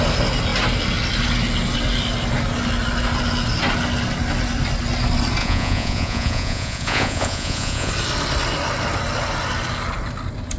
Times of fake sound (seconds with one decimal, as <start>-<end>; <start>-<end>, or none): 5.4-7.9